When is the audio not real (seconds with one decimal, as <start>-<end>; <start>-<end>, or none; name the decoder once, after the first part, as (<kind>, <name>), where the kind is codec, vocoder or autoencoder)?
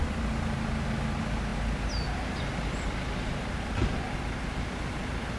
none